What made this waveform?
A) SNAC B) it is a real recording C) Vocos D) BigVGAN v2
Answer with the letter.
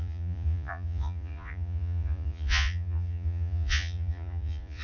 C